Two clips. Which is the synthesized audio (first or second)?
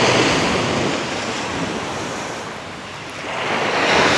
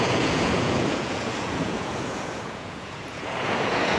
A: second